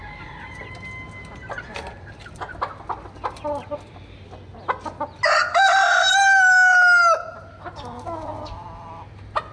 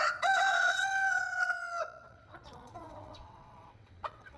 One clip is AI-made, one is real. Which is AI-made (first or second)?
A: second